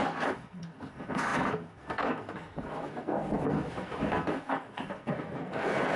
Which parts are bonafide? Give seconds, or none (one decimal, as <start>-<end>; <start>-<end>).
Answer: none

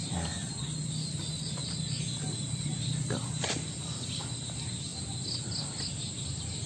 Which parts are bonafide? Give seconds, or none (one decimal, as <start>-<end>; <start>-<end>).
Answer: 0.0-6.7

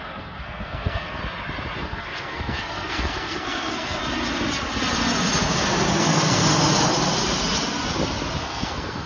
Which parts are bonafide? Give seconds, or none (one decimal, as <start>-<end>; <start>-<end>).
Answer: 1.2-1.8; 4.0-6.0; 6.4-8.4

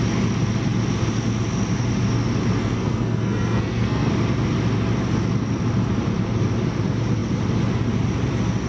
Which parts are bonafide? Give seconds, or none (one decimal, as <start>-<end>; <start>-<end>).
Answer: 0.0-2.6; 4.1-8.7

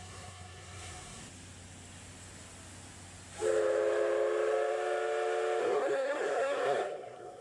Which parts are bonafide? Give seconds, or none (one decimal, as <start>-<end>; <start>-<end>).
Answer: 1.2-5.6

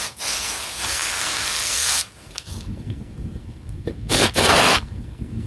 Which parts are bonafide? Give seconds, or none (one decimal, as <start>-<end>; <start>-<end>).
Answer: none

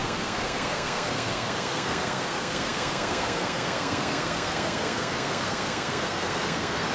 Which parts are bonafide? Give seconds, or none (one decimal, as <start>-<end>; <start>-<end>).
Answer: none

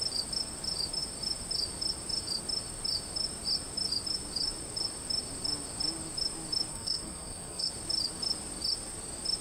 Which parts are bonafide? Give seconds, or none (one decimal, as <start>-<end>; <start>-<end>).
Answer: 0.0-6.7; 7.7-9.4